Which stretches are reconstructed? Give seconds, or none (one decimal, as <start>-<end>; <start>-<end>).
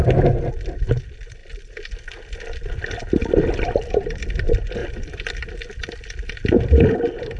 none